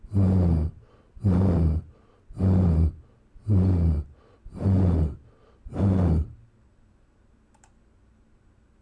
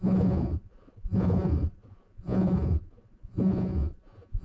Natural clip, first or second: first